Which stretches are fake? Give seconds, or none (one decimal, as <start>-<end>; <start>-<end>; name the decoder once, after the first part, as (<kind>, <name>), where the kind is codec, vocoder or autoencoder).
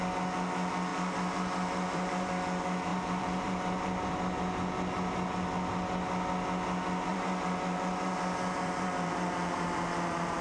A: 0.9-2.3 (vocoder, BigVGAN v2); 2.9-4.1; 7.1-10.4